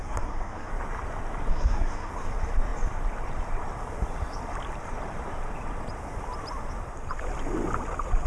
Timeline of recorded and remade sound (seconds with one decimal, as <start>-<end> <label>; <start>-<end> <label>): 0.0-0.7 remade; 0.7-1.5 recorded; 1.5-2.1 remade; 2.1-8.3 recorded